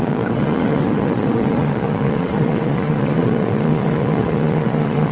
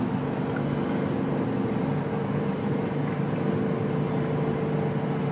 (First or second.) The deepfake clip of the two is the first